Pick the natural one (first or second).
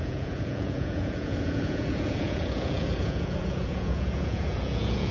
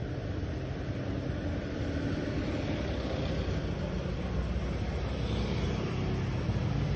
second